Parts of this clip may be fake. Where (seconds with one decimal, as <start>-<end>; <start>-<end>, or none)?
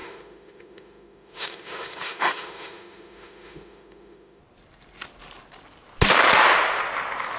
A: 0.0-4.4